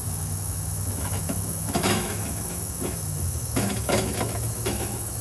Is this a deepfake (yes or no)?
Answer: yes